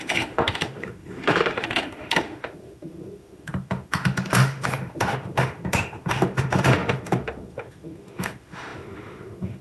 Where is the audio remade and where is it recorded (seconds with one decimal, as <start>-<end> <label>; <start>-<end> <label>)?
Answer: 0.0-9.6 remade